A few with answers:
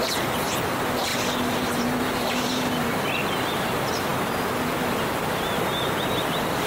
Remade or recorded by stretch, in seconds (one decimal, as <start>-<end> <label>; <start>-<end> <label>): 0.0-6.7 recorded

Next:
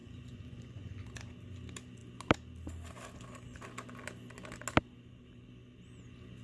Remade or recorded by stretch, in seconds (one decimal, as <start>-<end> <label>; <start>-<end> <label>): 0.0-0.9 remade; 0.9-6.4 recorded

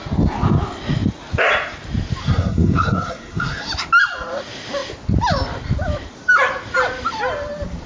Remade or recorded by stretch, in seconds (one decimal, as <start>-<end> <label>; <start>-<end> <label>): 0.0-2.2 recorded; 2.2-3.7 remade; 3.7-7.9 recorded

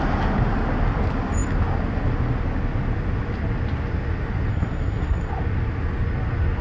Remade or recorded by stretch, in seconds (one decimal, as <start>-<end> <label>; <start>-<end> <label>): 0.0-4.5 recorded; 4.5-5.3 remade; 5.3-6.6 recorded